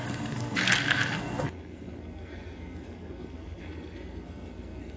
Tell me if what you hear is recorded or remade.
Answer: remade